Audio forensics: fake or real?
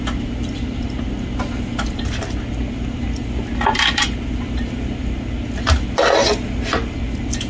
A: real